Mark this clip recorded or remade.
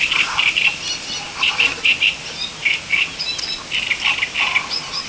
recorded